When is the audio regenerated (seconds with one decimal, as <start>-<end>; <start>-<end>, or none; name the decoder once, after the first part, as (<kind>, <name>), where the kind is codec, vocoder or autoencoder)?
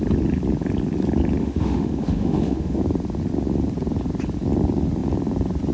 1.4-2.8 (autoencoder, DAC-VAE)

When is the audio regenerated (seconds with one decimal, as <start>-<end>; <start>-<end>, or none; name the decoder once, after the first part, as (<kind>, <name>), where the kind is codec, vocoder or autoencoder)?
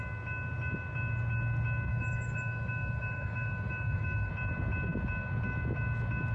1.9-4.3 (autoencoder, DAC-VAE)